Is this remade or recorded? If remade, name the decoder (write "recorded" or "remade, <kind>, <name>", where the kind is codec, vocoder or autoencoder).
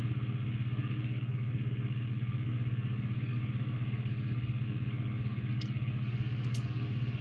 remade, codec, SNAC